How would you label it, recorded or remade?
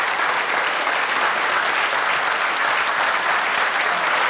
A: recorded